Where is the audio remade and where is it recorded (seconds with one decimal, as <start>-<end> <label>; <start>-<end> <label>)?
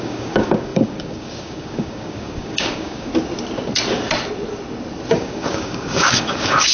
0.0-3.1 remade; 3.1-5.1 recorded; 5.1-6.7 remade